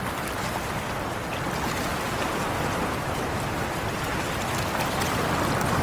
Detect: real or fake real